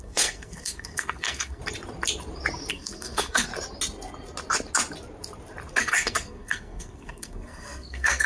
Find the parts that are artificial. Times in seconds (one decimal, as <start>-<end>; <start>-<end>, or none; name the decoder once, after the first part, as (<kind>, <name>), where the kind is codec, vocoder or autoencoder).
0.0-1.6 (codec, SNAC); 2.7-3.5; 5.8-8.3

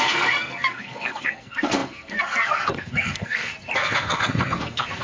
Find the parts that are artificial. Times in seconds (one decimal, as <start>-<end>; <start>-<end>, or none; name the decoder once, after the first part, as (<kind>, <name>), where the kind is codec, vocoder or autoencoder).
0.0-5.0 (codec, SNAC)